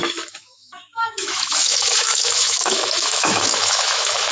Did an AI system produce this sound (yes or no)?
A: yes